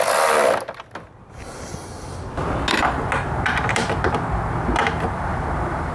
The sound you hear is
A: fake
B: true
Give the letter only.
B